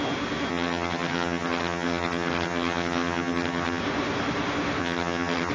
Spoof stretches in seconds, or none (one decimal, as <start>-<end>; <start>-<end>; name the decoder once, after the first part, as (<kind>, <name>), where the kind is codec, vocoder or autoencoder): 0.5-3.8 (vocoder, HiFi-GAN); 4.8-5.5